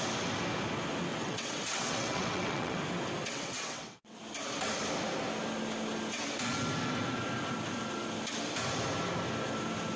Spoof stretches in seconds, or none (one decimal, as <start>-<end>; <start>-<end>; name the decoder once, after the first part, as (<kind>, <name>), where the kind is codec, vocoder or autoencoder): 1.1-2.8 (vocoder, WaveNeXt); 3.2-4.2